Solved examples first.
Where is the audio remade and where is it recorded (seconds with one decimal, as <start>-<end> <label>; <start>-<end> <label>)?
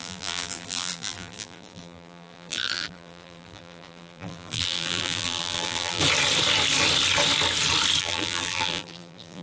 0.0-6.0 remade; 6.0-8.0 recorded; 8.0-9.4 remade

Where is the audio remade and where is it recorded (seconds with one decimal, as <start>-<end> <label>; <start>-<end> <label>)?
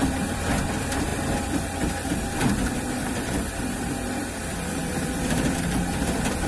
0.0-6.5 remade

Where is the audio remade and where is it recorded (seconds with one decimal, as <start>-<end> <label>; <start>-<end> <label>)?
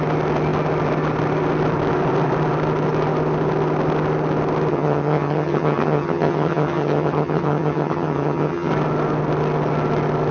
0.0-4.7 recorded; 4.7-8.7 remade; 8.7-10.3 recorded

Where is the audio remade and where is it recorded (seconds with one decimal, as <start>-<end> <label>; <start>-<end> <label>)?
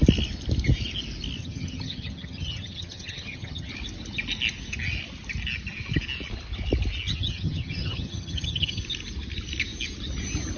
0.0-1.4 recorded; 1.4-3.7 remade; 3.7-7.1 recorded; 7.1-8.8 remade; 8.8-10.6 recorded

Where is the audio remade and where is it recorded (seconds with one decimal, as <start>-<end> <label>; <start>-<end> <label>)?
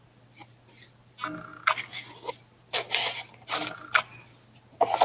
0.0-5.0 recorded